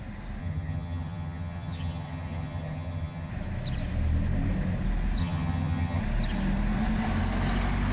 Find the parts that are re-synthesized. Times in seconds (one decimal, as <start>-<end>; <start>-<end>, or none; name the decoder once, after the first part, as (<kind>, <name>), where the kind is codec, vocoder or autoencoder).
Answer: 0.4-3.3 (vocoder, HiFi-GAN); 5.2-6.0